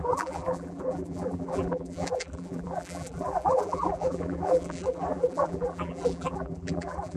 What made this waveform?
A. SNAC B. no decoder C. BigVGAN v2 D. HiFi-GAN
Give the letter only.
C